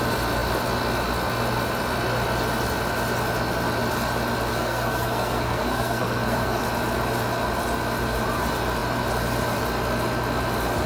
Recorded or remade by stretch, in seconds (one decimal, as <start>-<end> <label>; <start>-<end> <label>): 0.0-4.5 recorded; 4.5-6.6 remade; 6.6-10.9 recorded